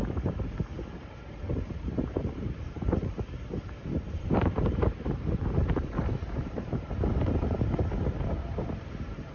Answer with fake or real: fake